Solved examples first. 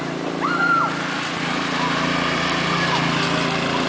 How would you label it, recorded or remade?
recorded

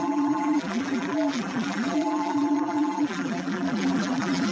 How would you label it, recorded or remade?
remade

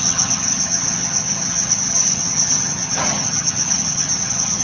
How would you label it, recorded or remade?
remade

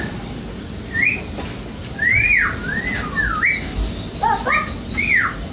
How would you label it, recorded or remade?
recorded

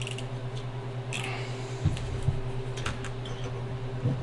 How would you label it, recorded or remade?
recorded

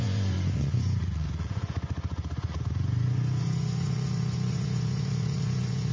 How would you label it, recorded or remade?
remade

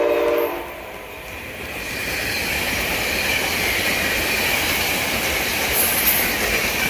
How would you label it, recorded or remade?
recorded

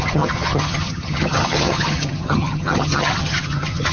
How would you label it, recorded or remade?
remade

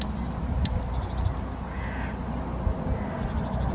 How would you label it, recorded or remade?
recorded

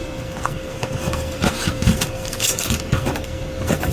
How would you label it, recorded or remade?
remade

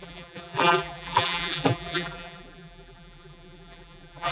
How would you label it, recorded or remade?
remade